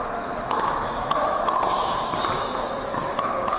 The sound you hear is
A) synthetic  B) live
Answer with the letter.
A